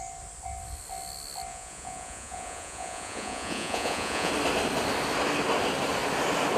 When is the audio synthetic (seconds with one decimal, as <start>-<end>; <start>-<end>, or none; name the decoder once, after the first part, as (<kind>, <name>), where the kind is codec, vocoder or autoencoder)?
1.5-4.3 (vocoder, Vocos)